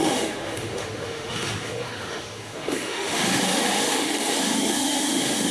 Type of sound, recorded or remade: remade